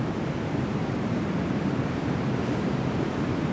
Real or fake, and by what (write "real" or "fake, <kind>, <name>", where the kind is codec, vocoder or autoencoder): fake, vocoder, BigVGAN v2